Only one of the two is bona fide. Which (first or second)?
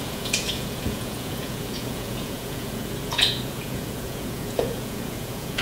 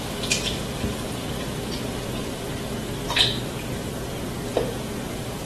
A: second